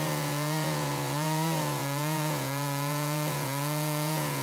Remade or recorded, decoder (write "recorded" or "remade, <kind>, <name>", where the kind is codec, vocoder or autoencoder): remade, vocoder, Vocos